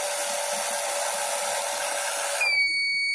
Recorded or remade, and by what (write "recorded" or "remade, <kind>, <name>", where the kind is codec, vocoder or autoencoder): recorded